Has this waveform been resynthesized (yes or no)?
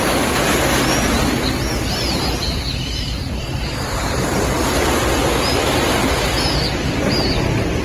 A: no